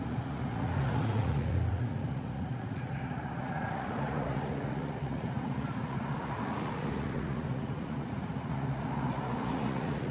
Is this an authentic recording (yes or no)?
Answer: no